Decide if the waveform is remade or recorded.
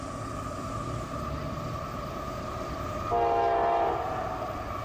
recorded